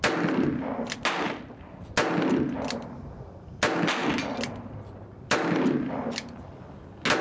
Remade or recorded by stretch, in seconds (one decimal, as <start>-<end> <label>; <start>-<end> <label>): 0.0-7.2 recorded